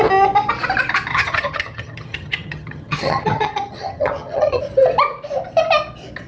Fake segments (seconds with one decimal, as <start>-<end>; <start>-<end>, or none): 1.1-4.6